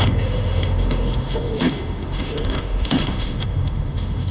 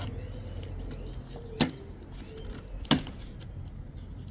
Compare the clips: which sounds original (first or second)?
second